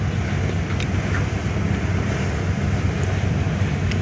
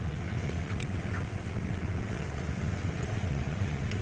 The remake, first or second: second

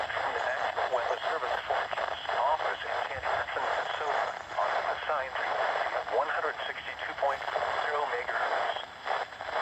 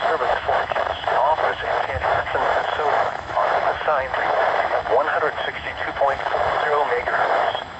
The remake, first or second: second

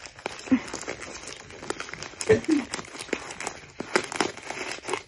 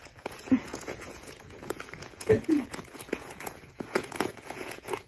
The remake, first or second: second